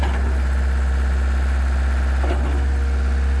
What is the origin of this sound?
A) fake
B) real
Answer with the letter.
B